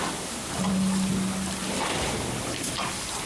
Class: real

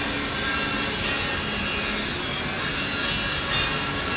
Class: real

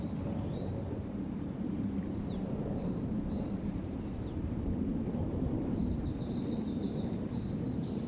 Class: fake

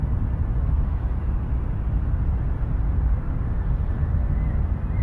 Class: fake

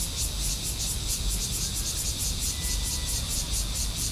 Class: real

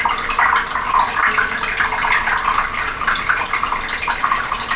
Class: real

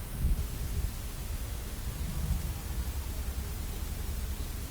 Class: real